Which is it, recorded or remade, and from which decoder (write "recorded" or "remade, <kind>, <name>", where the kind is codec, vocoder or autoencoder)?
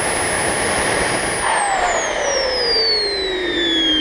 recorded